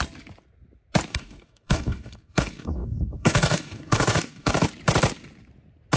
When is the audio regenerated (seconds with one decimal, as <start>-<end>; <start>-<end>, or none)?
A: 1.1-4.7